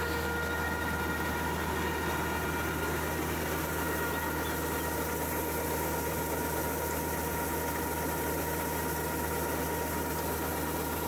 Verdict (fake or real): real